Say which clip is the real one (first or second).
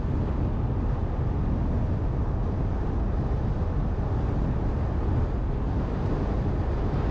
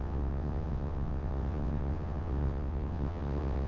first